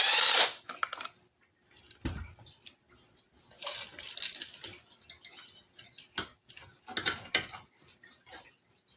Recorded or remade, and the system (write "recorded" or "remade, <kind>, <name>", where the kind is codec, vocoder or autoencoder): recorded